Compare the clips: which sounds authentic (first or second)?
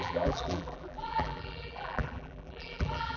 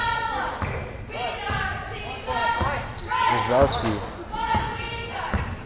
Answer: second